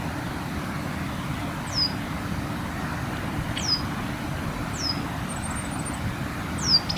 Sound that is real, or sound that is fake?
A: real